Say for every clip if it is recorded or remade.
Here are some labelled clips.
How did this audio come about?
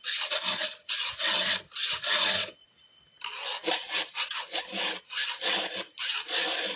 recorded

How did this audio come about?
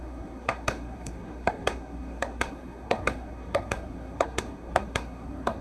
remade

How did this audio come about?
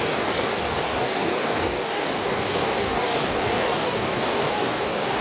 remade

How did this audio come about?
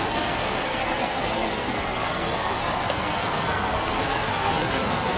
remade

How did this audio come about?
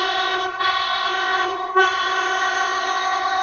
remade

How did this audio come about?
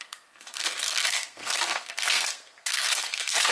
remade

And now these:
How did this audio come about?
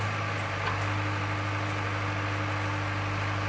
recorded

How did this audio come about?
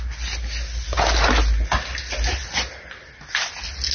recorded